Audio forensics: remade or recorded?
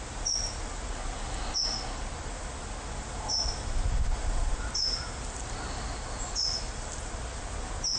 recorded